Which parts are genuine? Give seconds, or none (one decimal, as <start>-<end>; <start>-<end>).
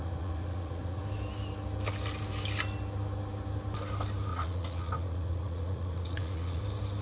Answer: 1.0-4.3; 6.6-7.0